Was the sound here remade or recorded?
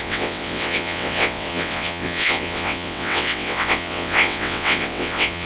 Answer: remade